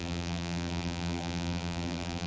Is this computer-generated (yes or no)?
yes